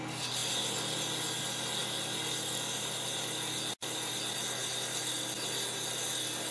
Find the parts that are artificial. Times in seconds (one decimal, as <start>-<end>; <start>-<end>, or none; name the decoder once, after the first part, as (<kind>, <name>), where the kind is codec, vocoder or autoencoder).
none